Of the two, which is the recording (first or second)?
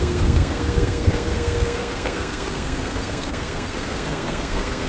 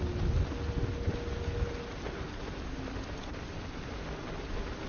second